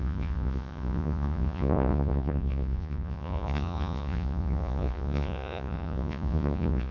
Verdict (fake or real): fake